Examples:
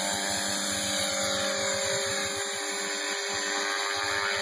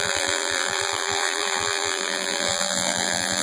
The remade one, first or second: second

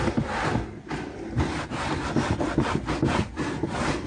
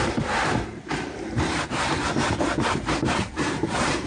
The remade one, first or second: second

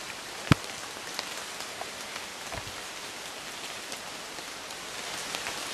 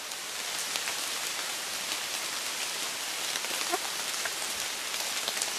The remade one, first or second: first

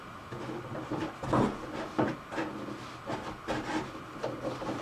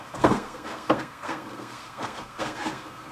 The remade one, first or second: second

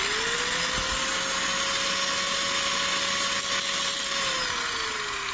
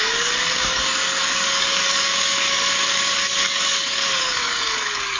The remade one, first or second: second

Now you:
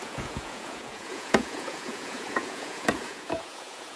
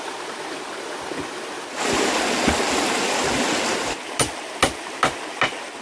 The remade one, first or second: first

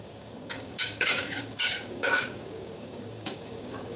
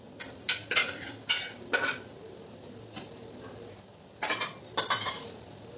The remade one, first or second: first